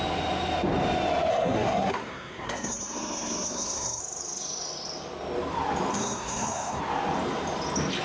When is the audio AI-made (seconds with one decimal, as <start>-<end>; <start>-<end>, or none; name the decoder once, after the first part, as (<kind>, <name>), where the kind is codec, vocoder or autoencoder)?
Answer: 1.3-4.0 (codec, SNAC); 5.9-6.8

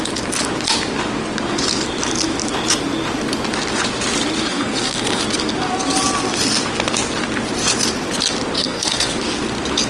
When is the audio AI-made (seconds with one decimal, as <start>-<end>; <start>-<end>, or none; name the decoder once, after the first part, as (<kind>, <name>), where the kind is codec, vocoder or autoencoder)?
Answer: 4.5-5.2 (codec, SNAC); 8.6-9.2

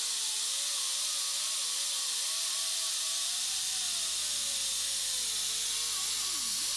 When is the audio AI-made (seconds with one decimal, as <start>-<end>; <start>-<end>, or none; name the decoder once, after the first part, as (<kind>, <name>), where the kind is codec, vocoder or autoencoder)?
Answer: none

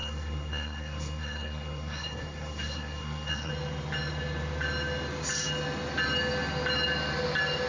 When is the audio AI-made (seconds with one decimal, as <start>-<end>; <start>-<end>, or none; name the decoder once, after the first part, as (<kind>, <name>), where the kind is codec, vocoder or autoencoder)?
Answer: 0.0-3.5 (codec, SNAC)

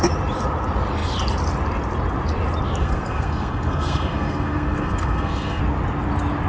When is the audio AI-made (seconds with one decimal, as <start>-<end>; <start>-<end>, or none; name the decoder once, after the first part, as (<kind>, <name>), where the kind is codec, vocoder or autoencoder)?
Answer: 2.8-5.6 (codec, SNAC)

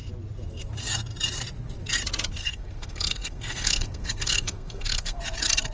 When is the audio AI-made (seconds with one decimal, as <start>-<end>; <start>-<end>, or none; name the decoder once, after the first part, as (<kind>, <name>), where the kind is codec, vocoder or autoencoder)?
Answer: 2.4-5.2 (codec, SNAC)